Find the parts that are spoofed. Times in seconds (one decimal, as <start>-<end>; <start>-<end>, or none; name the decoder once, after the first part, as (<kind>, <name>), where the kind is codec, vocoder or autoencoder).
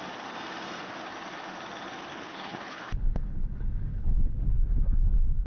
2.1-5.5 (codec, HILCodec)